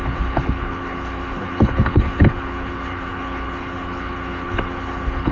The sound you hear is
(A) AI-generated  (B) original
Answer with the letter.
A